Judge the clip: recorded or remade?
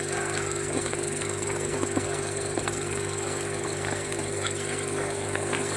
remade